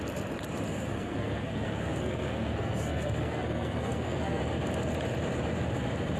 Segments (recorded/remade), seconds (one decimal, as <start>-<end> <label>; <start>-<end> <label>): 0.0-0.7 recorded; 0.7-4.4 remade; 4.4-6.2 recorded